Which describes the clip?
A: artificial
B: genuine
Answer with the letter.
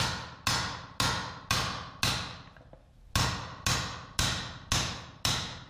B